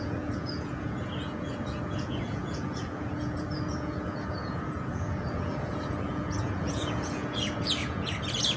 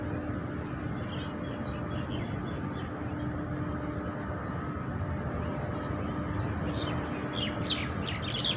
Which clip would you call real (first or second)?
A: second